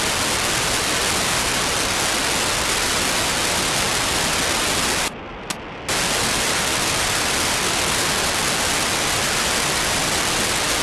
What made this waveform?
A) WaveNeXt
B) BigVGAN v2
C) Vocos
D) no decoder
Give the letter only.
D